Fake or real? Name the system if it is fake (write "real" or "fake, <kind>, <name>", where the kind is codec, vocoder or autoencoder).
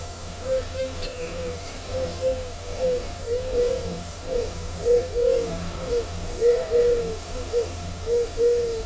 fake, codec, DAC